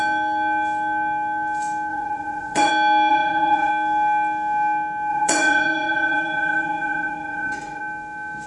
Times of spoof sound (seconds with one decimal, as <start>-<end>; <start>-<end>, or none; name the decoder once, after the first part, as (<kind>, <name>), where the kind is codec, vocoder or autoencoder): 1.9-2.7 (vocoder, Vocos); 3.1-3.7; 5.1-7.8